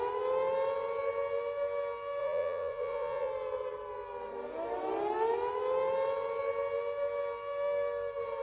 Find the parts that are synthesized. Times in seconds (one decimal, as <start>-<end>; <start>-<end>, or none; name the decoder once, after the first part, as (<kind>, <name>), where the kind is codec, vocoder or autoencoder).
2.2-3.3 (vocoder, Vocos)